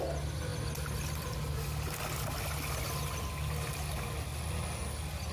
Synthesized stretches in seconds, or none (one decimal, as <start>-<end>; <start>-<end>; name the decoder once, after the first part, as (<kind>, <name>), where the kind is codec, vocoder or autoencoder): none